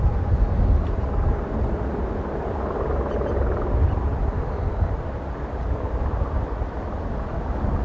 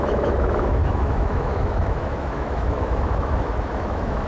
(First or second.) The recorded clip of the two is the first